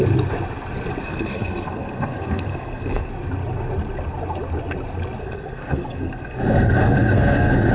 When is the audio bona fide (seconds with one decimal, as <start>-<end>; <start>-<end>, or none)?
0.0-1.0; 3.1-5.2

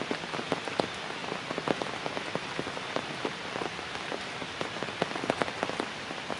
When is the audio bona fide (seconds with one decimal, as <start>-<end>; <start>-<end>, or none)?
0.0-6.4

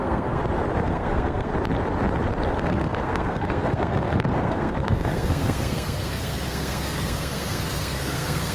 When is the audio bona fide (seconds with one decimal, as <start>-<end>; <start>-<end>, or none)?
0.4-0.9; 1.5-2.6